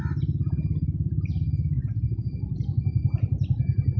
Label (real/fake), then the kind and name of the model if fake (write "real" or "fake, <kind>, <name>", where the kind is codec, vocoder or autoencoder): real